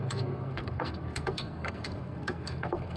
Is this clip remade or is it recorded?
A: remade